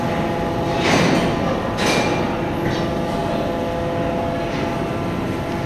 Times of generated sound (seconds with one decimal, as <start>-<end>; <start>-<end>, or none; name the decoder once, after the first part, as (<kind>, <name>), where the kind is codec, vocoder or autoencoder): none